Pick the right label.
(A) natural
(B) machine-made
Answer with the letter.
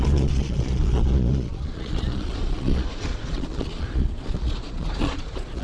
B